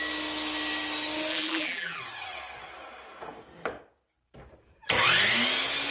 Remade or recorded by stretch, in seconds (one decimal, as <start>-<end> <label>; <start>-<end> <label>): 0.0-1.3 recorded; 1.3-2.0 remade; 2.0-5.9 recorded